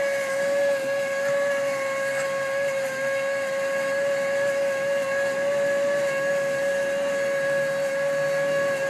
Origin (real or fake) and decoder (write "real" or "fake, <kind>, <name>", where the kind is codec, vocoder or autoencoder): real